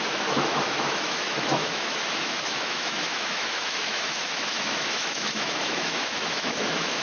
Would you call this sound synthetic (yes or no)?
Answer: yes